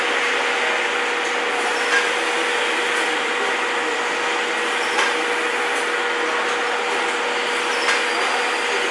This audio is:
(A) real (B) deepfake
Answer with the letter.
A